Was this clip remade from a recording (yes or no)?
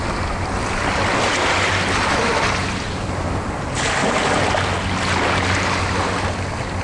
no